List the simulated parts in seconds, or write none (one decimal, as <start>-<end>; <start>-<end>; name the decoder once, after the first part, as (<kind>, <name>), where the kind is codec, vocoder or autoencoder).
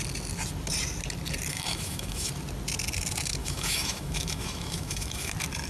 1.5-2.3 (autoencoder, DAC-VAE); 3.4-5.3